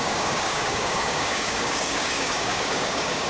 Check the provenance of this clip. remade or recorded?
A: remade